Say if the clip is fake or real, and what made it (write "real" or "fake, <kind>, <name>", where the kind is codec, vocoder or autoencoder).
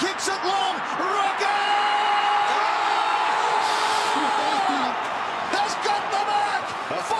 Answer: fake, vocoder, Vocos